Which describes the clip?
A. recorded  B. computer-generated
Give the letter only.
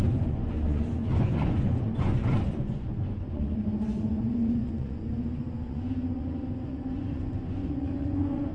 B